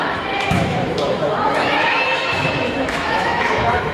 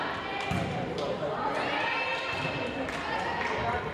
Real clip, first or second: second